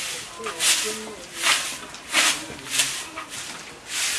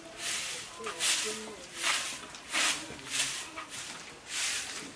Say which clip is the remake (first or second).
second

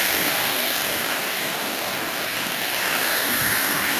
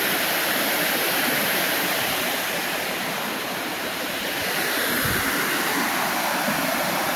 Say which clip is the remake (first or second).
first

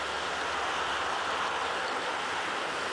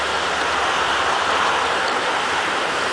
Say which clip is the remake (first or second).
second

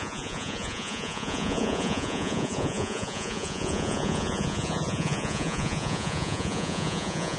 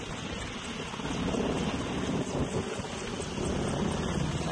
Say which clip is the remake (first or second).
first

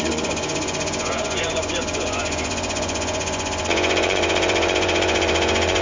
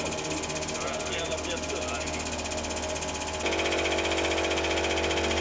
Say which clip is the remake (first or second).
first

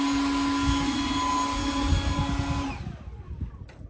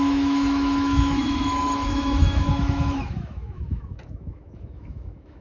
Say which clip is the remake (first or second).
second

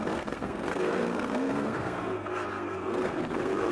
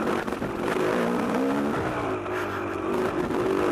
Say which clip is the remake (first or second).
first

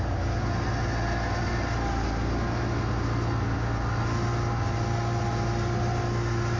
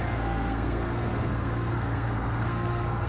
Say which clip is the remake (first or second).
second